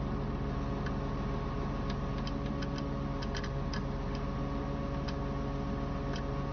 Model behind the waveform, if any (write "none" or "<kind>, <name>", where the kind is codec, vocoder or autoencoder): none